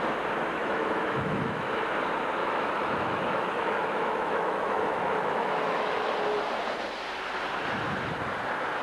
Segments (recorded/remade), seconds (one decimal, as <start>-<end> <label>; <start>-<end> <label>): 0.0-0.6 recorded; 0.6-1.8 remade; 1.8-2.4 recorded; 2.4-6.1 remade; 6.1-8.8 recorded